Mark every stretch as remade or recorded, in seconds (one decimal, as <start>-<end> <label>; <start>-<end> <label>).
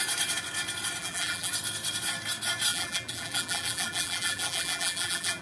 0.0-1.0 recorded; 1.0-1.5 remade; 1.5-2.7 recorded; 2.7-5.4 remade